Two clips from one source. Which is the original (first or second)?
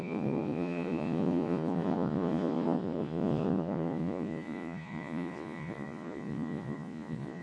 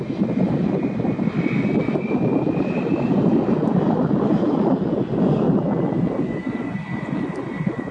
second